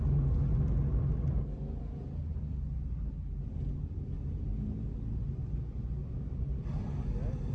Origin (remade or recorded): recorded